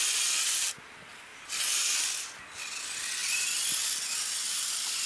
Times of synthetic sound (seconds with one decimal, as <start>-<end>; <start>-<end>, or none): none